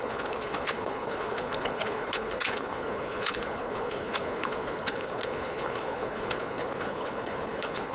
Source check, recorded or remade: remade